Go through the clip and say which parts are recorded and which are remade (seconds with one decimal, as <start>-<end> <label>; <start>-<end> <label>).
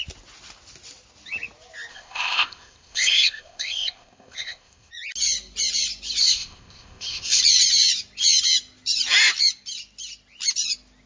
0.0-1.9 recorded; 1.9-4.9 remade; 4.9-6.2 recorded; 6.2-7.4 remade; 7.4-11.1 recorded